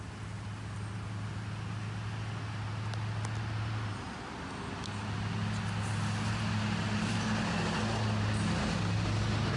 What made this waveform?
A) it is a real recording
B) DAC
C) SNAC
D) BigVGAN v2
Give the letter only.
A